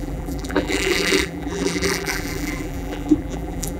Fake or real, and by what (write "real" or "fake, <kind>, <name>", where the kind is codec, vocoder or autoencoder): fake, vocoder, BigVGAN v2